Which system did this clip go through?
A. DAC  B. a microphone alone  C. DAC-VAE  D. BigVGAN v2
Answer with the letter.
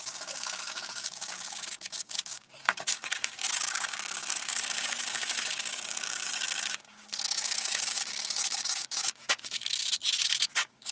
A